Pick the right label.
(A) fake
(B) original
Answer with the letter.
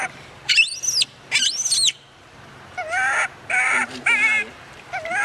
B